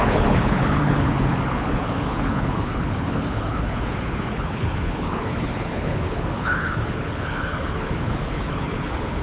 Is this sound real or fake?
fake